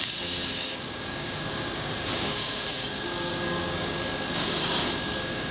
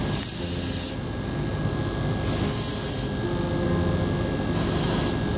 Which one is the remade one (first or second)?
first